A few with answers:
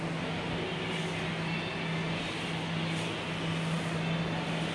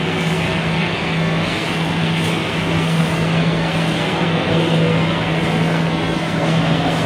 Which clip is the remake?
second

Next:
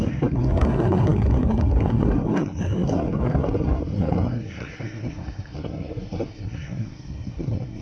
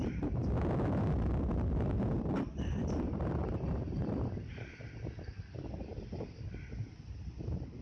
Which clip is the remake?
first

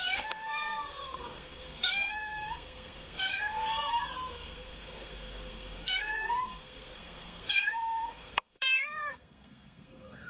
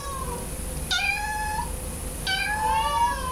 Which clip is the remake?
first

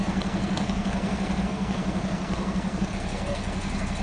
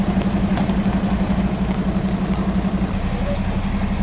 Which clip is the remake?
first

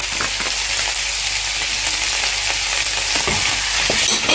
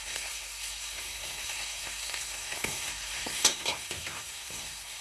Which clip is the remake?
second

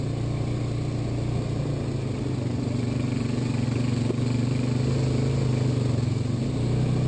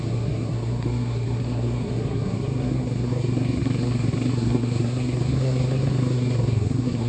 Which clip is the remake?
second